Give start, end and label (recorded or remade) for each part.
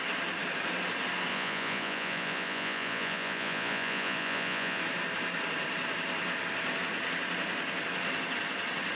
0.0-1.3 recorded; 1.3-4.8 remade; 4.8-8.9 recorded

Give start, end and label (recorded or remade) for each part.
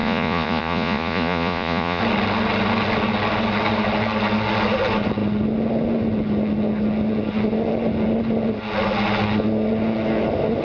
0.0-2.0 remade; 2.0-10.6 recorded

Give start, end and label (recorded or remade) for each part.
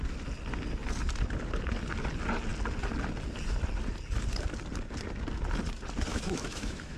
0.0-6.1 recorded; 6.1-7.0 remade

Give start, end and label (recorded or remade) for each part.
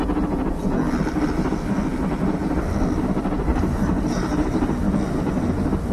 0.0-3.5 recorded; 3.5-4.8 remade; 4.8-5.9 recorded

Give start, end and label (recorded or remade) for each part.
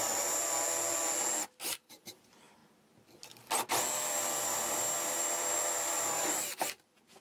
0.0-0.4 remade; 0.4-1.7 recorded; 1.7-2.6 remade; 2.6-4.4 recorded; 4.4-7.2 remade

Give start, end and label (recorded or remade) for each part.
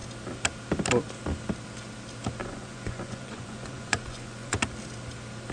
0.0-2.4 recorded; 2.4-4.6 remade; 4.6-5.5 recorded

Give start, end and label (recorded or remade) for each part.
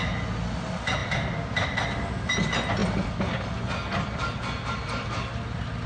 0.0-5.9 recorded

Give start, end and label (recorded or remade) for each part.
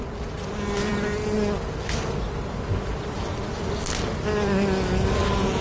0.0-5.6 recorded